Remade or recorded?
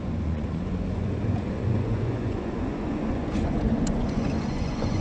remade